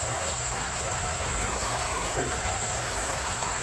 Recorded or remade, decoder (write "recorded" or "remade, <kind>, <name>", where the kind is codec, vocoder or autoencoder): remade, codec, SNAC